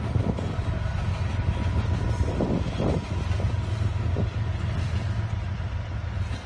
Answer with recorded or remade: recorded